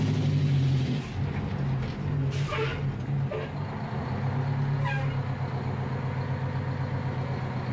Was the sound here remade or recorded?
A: recorded